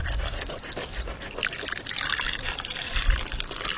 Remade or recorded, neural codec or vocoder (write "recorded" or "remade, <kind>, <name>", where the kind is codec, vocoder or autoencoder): recorded